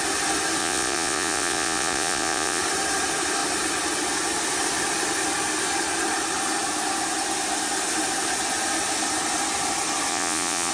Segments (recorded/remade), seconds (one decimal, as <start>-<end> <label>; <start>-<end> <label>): 0.0-0.6 recorded; 0.6-2.6 remade; 2.6-10.1 recorded; 10.1-10.7 remade

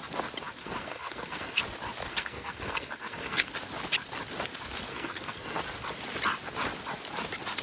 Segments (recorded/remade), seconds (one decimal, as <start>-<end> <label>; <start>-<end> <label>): 0.0-0.6 recorded; 0.6-1.6 remade; 1.6-2.1 recorded; 2.1-3.5 remade; 3.5-4.9 recorded; 4.9-5.6 remade; 5.6-7.6 recorded

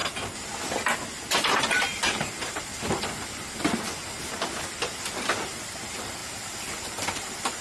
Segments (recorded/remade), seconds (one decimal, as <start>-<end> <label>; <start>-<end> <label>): 0.0-1.6 recorded; 1.6-2.7 remade; 2.7-4.6 recorded; 4.6-7.6 remade

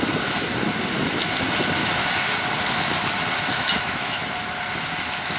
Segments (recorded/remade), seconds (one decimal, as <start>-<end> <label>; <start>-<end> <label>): 0.0-1.8 recorded; 1.8-2.4 remade; 2.4-3.5 recorded; 3.5-4.2 remade; 4.2-5.4 recorded

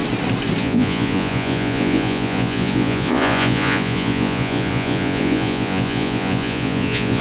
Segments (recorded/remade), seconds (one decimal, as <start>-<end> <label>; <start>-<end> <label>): 0.0-0.6 recorded; 0.6-7.2 remade

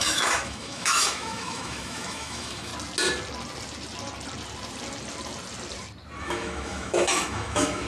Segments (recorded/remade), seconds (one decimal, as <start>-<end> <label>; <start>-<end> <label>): 0.0-2.7 remade; 2.7-6.2 recorded; 6.2-7.9 remade

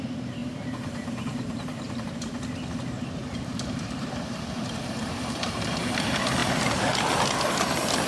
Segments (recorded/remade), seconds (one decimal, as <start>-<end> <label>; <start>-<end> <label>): 0.0-0.4 recorded; 0.4-2.1 remade; 2.1-3.2 recorded; 3.2-5.8 remade; 5.8-8.1 recorded